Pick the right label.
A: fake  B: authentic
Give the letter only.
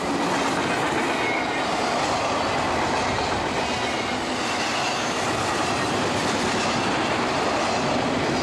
B